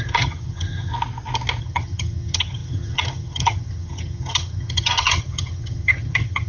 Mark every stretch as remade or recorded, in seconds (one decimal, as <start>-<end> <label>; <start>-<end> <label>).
0.0-0.9 remade; 0.9-1.6 recorded; 1.6-6.5 remade